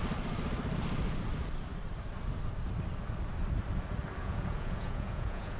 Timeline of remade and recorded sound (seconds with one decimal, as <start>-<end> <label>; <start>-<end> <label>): 0.0-4.2 recorded; 4.2-5.6 remade